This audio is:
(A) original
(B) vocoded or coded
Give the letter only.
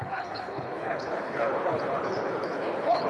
B